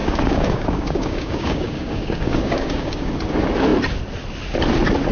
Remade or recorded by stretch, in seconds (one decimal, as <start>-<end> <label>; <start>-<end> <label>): 0.0-3.1 remade; 3.1-5.1 recorded